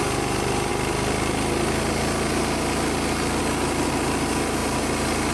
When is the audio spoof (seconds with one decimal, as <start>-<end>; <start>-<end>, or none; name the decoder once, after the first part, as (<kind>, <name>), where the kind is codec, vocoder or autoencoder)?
none